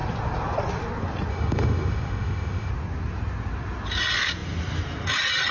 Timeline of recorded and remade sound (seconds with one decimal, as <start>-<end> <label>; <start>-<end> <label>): 0.0-1.3 recorded; 1.3-2.7 remade; 2.7-5.5 recorded